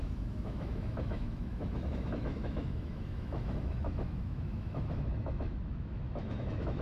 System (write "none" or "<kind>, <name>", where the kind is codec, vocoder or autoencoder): autoencoder, DAC-VAE